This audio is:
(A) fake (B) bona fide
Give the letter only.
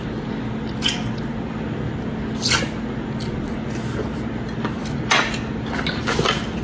B